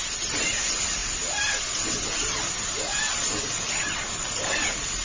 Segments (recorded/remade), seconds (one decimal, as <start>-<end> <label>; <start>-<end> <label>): 0.0-5.0 recorded